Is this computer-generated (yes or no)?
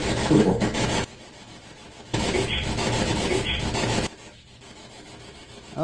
yes